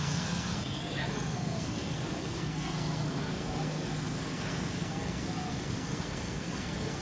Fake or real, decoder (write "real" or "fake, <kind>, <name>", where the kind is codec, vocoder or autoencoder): fake, codec, SNAC